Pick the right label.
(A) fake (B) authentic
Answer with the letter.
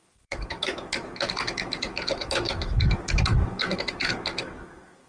A